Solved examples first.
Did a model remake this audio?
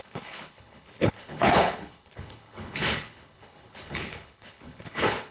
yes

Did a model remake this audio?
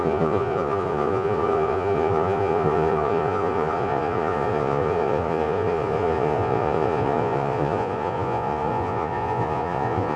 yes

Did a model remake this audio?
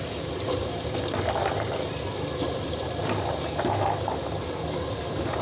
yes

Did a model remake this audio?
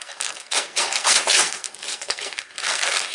yes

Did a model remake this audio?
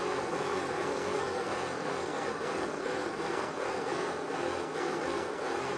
yes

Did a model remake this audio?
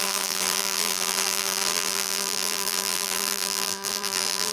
yes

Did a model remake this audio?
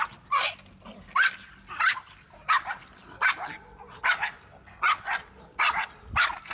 no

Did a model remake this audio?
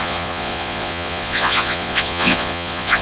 yes